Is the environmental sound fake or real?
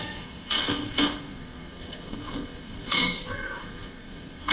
fake